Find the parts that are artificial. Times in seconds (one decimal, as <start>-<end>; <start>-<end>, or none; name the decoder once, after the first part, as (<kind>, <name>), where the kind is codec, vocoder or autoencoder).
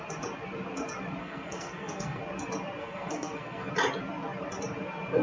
1.2-2.2 (codec, SNAC); 2.8-3.7